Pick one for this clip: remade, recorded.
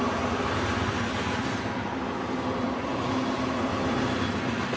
recorded